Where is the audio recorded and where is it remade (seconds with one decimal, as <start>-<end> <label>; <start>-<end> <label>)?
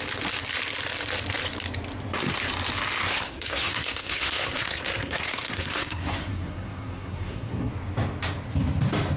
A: 0.0-3.0 recorded; 3.0-7.7 remade; 7.7-9.2 recorded